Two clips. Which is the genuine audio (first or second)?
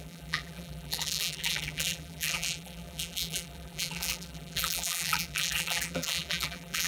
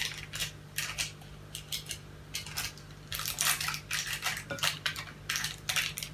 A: second